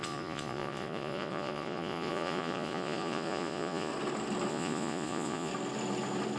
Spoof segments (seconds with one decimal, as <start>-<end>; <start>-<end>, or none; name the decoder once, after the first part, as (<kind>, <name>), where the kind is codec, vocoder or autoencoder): 0.0-3.9 (vocoder, Vocos); 4.5-5.5